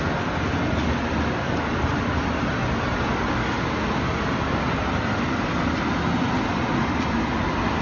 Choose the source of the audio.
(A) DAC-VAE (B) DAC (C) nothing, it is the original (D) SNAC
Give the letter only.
C